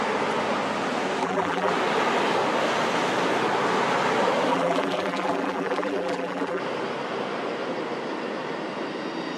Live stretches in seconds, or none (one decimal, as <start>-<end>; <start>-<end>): 0.0-1.2; 1.7-4.5; 6.6-9.4